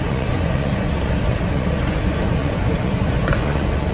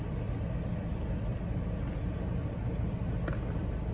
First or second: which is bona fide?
second